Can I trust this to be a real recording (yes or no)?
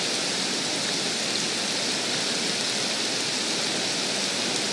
yes